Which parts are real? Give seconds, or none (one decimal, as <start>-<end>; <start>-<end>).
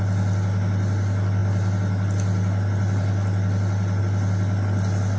0.0-5.2